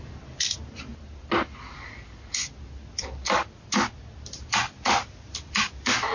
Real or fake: real